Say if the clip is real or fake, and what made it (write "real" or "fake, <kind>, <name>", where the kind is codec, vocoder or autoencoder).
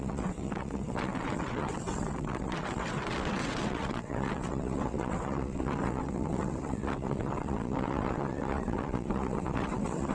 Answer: fake, vocoder, WaveNeXt